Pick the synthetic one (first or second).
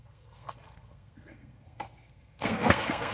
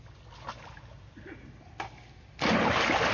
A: first